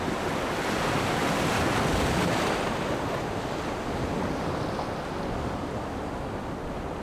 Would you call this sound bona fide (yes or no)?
yes